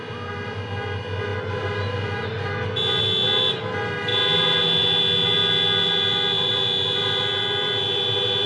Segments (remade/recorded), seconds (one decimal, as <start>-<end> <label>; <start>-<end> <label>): 0.0-8.5 recorded